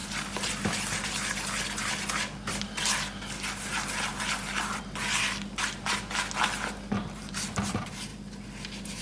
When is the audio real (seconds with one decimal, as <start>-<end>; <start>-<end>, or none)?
0.0-9.0